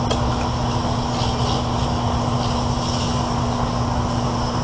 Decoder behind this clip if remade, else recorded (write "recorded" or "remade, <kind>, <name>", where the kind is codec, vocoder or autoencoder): recorded